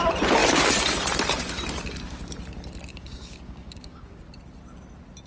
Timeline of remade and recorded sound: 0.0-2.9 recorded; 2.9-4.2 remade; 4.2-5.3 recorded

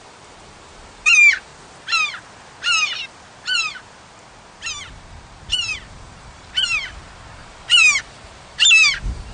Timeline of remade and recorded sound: 0.0-1.5 remade; 1.5-4.9 recorded; 4.9-9.3 remade

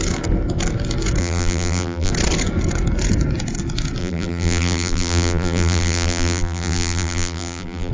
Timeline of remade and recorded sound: 0.0-1.2 recorded; 1.2-2.1 remade; 2.1-4.0 recorded; 4.0-7.9 remade

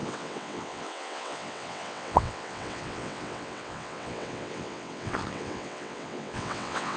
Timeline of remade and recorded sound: 0.0-7.0 remade

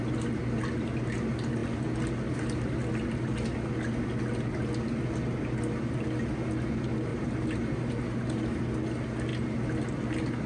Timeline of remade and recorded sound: 0.0-7.1 recorded; 7.1-8.6 remade; 8.6-10.5 recorded

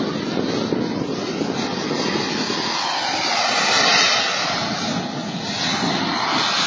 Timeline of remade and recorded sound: 0.0-6.7 recorded

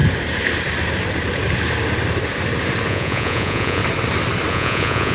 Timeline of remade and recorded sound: 0.0-2.9 recorded; 2.9-3.8 remade; 3.8-4.5 recorded; 4.5-5.1 remade